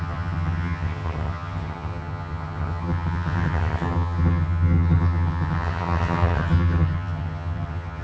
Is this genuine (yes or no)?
no